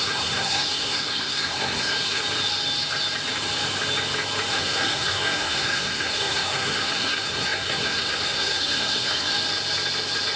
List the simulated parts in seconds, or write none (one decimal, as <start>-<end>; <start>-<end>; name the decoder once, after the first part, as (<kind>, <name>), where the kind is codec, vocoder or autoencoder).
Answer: 0.0-2.2 (codec, SNAC); 4.5-9.3

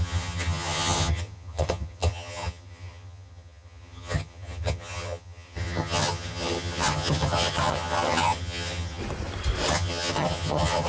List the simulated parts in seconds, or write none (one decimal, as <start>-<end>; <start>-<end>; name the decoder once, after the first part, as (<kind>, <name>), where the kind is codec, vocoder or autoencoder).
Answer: 0.0-9.0 (vocoder, HiFi-GAN); 9.7-10.9

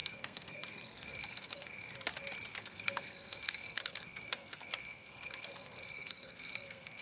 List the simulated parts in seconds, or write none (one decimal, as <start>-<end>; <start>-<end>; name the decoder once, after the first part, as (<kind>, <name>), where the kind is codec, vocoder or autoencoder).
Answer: 0.0-1.9 (codec, SNAC); 2.6-7.0

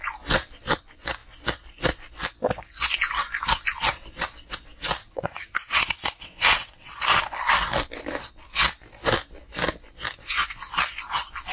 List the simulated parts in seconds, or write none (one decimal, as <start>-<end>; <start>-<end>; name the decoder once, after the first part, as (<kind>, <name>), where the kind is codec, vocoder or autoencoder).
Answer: 5.0-6.9 (vocoder, WaveNeXt)